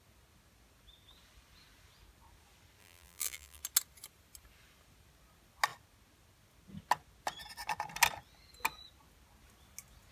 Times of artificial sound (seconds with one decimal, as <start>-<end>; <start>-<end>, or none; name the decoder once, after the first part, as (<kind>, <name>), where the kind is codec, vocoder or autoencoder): 2.8-3.6 (vocoder, BigVGAN v2)